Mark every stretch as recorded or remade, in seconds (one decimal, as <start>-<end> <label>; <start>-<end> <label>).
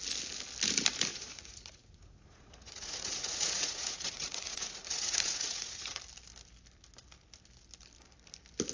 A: 0.0-1.1 recorded; 1.1-6.0 remade; 6.0-8.7 recorded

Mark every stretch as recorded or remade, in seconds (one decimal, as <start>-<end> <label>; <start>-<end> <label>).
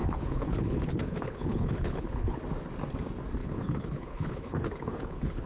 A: 0.0-2.4 remade; 2.4-3.4 recorded; 3.4-5.5 remade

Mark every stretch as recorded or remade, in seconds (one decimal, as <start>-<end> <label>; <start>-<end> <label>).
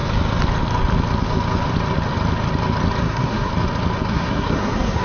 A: 0.0-3.0 recorded; 3.0-3.5 remade; 3.5-4.1 recorded; 4.1-5.0 remade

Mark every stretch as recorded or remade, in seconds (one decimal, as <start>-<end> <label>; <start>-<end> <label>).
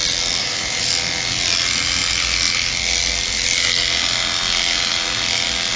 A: 0.0-0.4 recorded; 0.4-0.9 remade; 0.9-5.8 recorded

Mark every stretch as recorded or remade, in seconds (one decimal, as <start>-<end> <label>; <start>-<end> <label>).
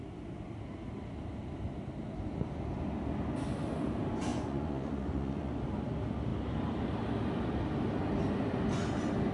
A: 0.0-4.3 recorded; 4.3-5.5 remade; 5.5-9.3 recorded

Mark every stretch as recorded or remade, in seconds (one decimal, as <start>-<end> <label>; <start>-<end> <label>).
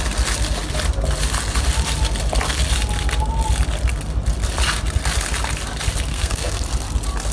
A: 0.0-6.1 recorded; 6.1-6.6 remade; 6.6-7.3 recorded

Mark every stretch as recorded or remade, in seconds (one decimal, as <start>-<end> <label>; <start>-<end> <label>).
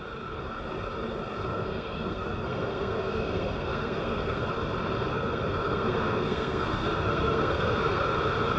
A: 0.0-1.5 recorded; 1.5-4.5 remade; 4.5-5.1 recorded; 5.1-8.2 remade; 8.2-8.6 recorded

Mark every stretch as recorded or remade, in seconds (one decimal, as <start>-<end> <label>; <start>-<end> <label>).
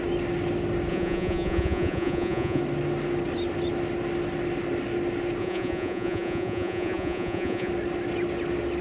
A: 0.0-0.9 recorded; 0.9-2.6 remade; 2.6-5.4 recorded; 5.4-7.7 remade; 7.7-8.8 recorded